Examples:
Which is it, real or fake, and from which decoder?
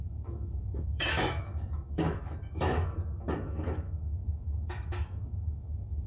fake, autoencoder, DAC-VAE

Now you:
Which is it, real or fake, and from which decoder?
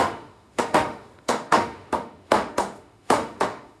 fake, autoencoder, DAC-VAE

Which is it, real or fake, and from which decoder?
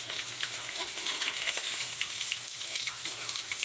fake, autoencoder, DAC-VAE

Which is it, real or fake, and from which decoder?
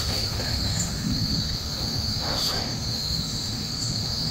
fake, autoencoder, DAC-VAE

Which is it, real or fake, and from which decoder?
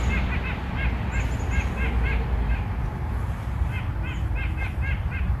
real